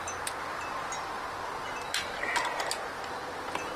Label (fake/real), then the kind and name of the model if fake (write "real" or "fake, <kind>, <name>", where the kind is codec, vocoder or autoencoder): real